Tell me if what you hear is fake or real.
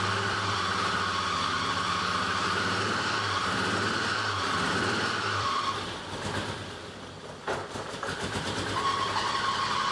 fake